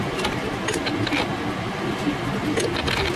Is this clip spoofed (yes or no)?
no